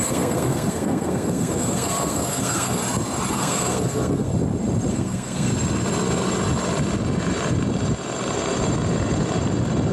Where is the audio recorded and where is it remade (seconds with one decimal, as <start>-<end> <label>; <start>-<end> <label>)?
0.0-2.8 remade; 2.8-3.3 recorded; 3.3-4.3 remade; 4.3-4.9 recorded; 4.9-5.5 remade; 5.5-9.9 recorded

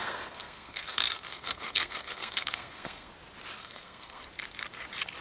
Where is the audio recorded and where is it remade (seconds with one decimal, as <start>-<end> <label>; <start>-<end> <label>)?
0.0-3.1 remade; 3.1-3.6 recorded; 3.6-4.2 remade; 4.2-5.2 recorded

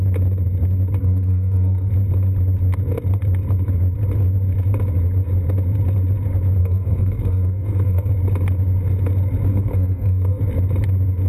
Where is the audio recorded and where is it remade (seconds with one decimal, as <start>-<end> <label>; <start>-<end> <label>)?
0.0-1.0 recorded; 1.0-1.9 remade; 1.9-6.6 recorded; 6.6-8.1 remade; 8.1-9.5 recorded; 9.5-10.4 remade; 10.4-11.3 recorded